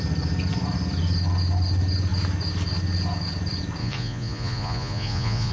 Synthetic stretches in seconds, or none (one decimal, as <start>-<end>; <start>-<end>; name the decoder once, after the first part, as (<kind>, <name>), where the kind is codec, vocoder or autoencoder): 3.8-5.5 (vocoder, Vocos)